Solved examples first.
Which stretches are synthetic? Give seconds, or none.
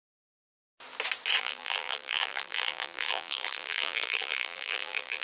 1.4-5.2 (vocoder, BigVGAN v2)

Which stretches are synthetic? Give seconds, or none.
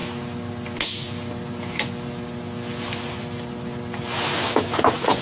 none